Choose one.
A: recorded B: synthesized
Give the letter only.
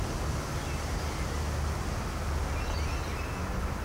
A